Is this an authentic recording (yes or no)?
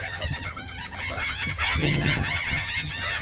no